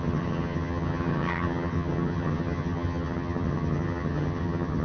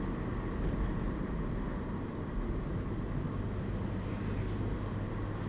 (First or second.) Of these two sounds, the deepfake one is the first